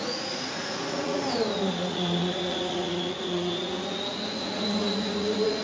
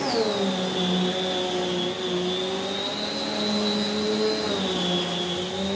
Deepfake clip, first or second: first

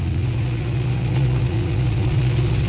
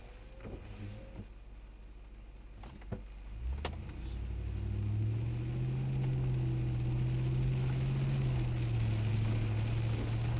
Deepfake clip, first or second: first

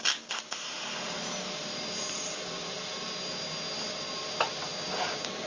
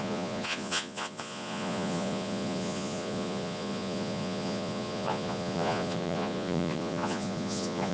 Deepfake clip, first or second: second